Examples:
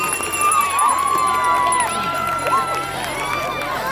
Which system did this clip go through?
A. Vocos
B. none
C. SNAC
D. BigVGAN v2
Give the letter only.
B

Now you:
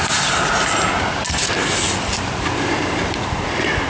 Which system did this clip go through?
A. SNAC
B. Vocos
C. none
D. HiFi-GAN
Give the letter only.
C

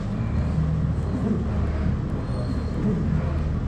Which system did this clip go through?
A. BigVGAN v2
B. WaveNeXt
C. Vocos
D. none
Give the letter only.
D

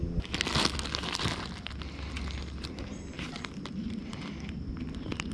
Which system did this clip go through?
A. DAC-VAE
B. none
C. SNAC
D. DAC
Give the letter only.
B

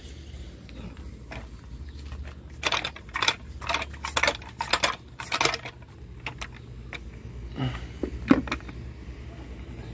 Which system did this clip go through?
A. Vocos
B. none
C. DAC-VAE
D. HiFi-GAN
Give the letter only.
B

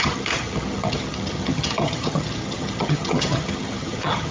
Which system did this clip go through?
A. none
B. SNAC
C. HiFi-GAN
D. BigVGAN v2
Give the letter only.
C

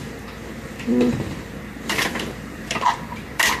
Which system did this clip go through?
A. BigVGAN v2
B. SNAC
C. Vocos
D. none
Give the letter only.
A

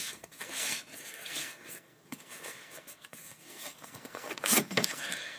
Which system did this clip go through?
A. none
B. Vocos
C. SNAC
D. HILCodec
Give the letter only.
C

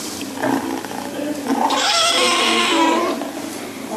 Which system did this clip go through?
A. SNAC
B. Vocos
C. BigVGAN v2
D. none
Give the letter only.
D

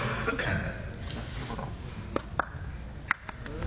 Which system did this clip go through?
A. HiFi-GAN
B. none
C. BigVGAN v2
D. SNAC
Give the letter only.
B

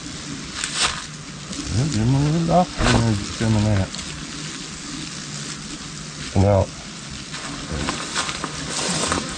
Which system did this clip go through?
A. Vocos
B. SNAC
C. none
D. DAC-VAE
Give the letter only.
C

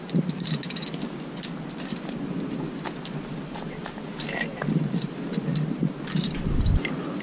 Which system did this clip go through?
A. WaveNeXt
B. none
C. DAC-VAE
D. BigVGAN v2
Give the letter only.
B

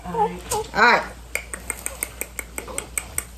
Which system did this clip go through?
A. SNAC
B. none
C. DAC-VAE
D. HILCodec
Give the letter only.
B